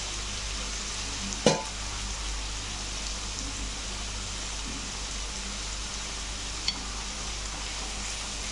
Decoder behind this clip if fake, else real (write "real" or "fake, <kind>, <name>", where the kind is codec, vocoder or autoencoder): real